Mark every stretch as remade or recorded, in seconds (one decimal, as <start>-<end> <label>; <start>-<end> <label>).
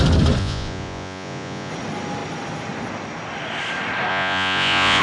0.0-0.4 recorded; 0.4-1.7 remade; 1.7-4.1 recorded; 4.1-5.0 remade